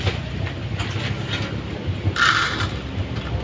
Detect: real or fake real